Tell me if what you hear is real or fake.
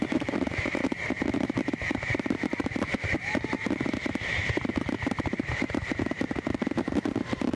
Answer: fake